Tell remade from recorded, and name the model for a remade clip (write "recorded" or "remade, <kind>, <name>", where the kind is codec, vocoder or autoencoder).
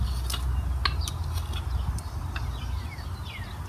recorded